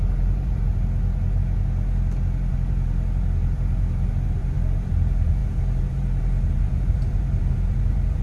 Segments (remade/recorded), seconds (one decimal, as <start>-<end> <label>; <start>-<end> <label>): 0.0-0.7 remade; 0.7-2.5 recorded; 2.5-8.2 remade